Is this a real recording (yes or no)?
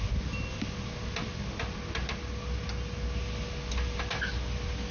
yes